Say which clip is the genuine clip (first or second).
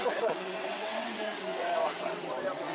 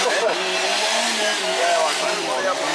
second